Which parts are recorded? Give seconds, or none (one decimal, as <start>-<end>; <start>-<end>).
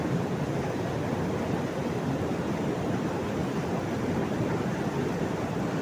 0.0-5.8